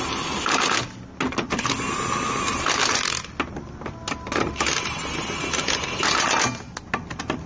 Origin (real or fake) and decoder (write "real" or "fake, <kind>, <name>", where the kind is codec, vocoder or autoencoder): real